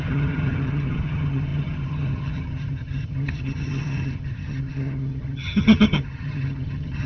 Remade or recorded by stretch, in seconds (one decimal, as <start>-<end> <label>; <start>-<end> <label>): 0.0-7.1 remade